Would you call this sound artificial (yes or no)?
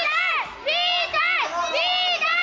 no